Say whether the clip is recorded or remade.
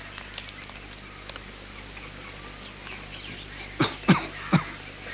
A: recorded